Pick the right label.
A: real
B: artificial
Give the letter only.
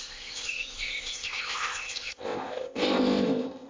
B